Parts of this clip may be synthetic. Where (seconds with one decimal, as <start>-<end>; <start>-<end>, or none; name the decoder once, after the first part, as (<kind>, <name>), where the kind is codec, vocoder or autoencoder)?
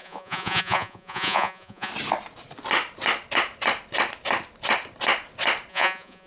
0.0-1.9 (vocoder, Vocos); 5.7-6.3